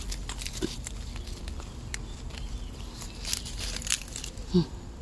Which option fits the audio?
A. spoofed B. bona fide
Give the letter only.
B